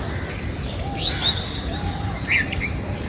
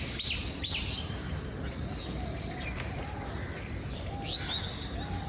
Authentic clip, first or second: second